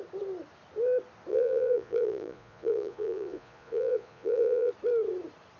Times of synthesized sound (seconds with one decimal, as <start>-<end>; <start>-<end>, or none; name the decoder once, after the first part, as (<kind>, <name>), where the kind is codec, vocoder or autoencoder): 1.3-4.7 (vocoder, Vocos)